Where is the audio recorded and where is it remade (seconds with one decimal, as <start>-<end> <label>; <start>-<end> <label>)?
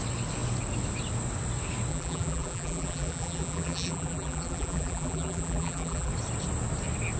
0.0-1.9 recorded; 1.9-6.1 remade; 6.1-7.2 recorded